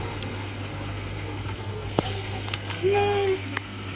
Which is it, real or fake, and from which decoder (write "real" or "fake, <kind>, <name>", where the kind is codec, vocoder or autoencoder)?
fake, codec, SNAC